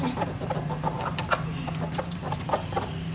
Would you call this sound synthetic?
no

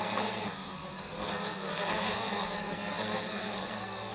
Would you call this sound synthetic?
yes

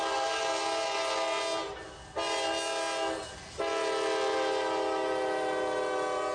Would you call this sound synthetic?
no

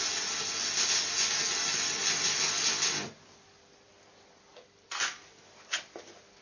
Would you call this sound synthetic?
no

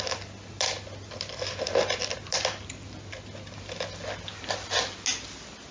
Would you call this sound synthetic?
no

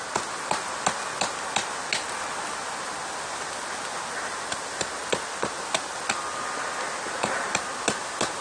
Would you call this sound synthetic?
no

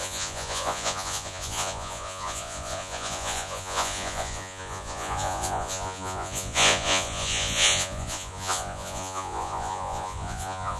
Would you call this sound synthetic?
yes